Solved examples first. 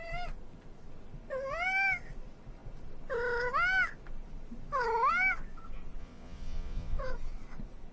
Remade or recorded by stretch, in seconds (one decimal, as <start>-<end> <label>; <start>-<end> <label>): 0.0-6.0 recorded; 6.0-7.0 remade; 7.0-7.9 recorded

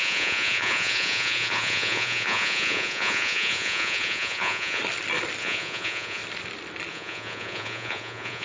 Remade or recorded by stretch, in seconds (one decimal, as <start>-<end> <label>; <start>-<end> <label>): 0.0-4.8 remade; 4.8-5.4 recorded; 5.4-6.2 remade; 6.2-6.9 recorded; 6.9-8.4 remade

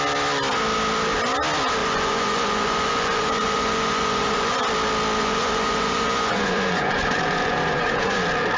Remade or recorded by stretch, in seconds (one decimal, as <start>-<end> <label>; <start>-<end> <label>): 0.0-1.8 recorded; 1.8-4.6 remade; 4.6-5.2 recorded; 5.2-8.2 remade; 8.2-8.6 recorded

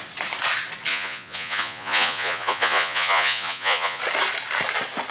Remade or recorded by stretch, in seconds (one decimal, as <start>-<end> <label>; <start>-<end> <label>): 0.0-0.9 recorded; 0.9-4.0 remade; 4.0-5.1 recorded

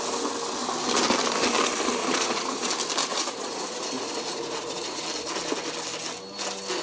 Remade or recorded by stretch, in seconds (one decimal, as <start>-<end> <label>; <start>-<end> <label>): 0.0-2.0 recorded; 2.0-2.7 remade; 2.7-3.1 recorded; 3.1-5.0 remade; 5.0-6.8 recorded

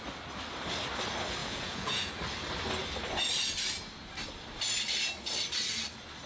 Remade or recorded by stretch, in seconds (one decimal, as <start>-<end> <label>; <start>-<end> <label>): 0.0-1.4 recorded; 1.4-2.1 remade; 2.1-6.3 recorded